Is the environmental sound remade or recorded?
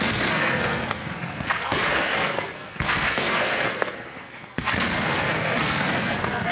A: remade